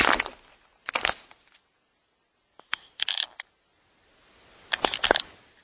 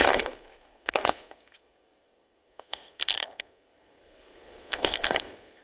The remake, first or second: second